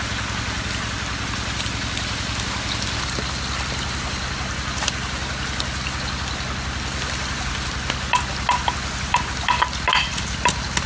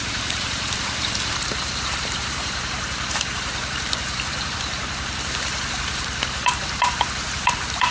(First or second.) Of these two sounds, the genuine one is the first